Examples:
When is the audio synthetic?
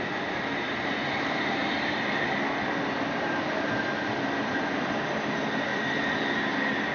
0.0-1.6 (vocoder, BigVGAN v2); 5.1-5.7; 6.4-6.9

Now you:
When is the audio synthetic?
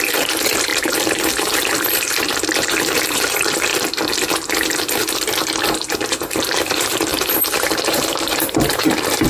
0.0-3.7 (vocoder, BigVGAN v2); 4.7-9.3